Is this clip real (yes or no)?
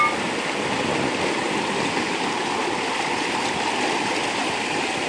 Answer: yes